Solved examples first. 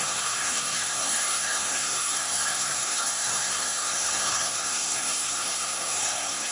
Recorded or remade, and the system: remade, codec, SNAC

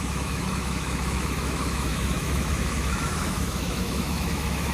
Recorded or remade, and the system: remade, autoencoder, DAC-VAE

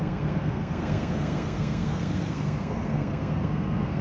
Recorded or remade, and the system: remade, codec, SNAC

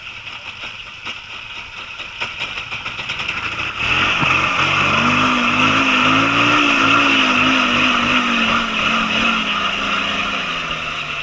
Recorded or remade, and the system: recorded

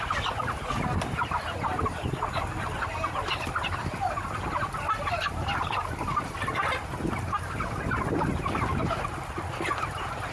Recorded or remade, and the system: recorded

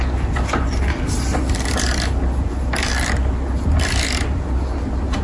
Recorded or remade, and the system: recorded